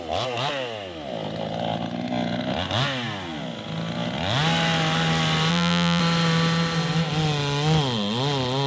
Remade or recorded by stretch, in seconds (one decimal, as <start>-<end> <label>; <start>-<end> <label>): 0.0-5.5 recorded; 5.5-6.0 remade; 6.0-8.7 recorded